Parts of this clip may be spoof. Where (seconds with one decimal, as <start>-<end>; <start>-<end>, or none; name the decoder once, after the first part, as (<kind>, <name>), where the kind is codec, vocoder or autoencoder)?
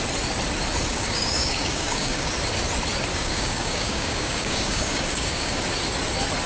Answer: 0.9-2.3 (codec, DAC); 3.1-5.6